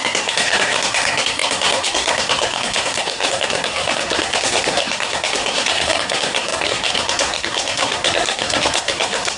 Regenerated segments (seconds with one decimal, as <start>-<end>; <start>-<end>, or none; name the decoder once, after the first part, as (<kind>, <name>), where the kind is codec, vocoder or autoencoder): 0.0-9.4 (codec, SNAC)